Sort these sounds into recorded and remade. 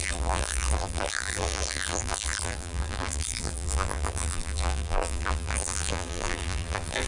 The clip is remade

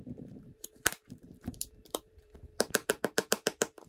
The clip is remade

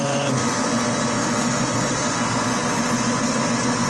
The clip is remade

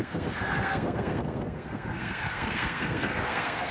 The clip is remade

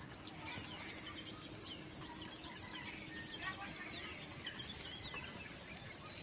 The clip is recorded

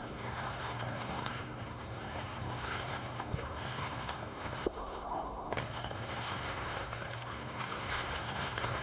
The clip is remade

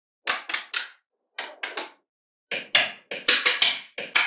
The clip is recorded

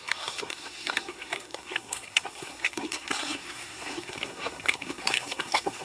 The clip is remade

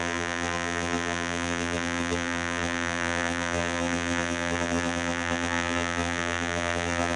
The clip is remade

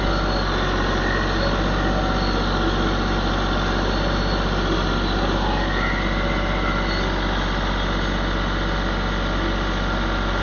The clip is recorded